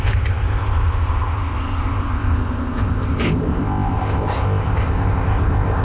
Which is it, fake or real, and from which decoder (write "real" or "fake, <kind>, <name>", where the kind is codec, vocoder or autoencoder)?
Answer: fake, codec, ZipCodec